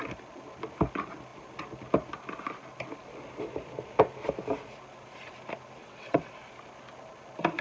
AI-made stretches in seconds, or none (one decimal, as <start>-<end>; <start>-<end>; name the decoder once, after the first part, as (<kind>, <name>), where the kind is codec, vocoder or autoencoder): 5.8-6.3 (vocoder, WaveNeXt)